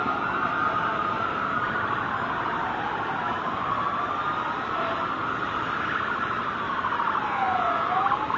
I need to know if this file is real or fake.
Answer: real